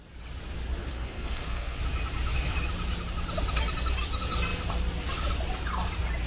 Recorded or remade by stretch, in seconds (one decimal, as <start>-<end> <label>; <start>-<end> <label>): 0.0-0.9 recorded; 0.9-1.8 remade; 1.8-6.3 recorded